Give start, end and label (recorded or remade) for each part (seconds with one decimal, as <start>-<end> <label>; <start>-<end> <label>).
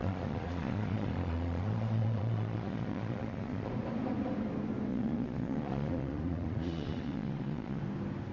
0.0-3.7 remade; 3.7-4.9 recorded; 4.9-7.8 remade; 7.8-8.3 recorded